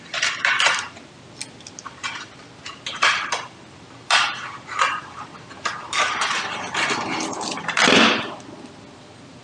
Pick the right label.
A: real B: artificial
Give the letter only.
A